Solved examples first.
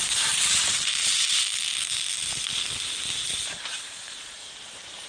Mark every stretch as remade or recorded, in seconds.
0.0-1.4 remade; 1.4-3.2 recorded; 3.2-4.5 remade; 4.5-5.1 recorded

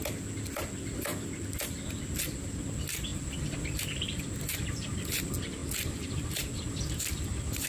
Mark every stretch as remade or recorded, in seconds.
0.0-7.7 recorded

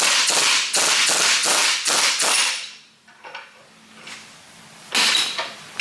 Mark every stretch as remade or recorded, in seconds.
0.0-5.8 recorded

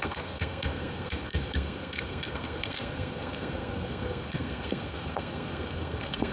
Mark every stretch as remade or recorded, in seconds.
0.0-6.3 remade

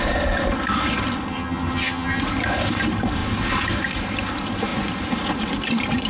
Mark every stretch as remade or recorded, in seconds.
0.0-1.3 recorded; 1.3-2.2 remade; 2.2-6.1 recorded

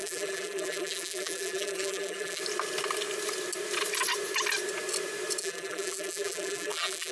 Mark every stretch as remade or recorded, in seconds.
0.0-2.4 remade; 2.4-5.4 recorded; 5.4-7.1 remade